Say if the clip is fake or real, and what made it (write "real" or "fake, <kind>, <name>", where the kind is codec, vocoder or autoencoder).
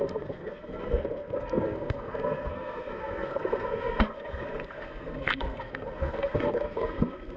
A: fake, codec, SNAC